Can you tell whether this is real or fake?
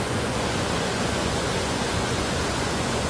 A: fake